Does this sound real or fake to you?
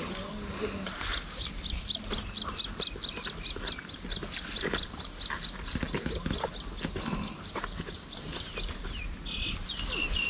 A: real